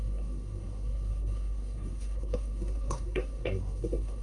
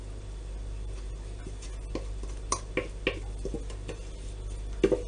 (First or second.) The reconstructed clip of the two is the first